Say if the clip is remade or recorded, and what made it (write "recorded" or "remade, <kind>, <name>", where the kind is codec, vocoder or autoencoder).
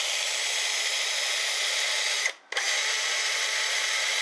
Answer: recorded